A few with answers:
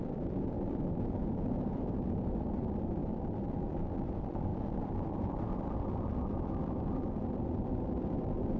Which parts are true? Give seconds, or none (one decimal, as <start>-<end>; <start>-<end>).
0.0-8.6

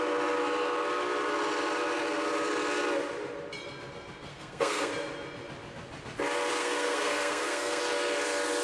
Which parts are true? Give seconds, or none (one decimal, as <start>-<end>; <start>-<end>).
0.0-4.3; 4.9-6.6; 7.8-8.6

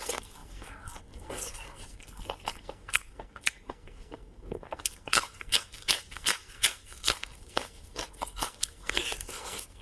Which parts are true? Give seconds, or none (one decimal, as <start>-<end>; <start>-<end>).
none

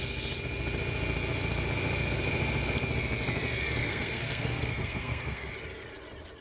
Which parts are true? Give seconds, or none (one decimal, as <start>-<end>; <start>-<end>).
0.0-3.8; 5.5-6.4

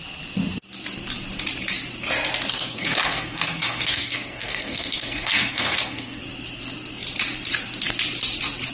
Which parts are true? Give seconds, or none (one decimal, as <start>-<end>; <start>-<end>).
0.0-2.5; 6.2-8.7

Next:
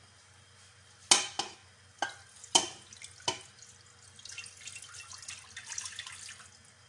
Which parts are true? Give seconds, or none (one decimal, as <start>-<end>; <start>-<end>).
0.0-6.9

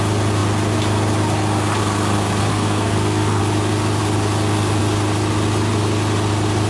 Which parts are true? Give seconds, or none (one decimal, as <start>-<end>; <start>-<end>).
0.0-2.5; 3.4-6.7